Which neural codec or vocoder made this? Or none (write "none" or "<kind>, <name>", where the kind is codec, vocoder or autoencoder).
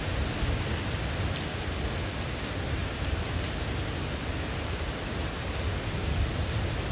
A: none